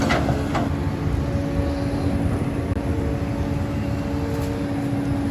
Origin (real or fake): real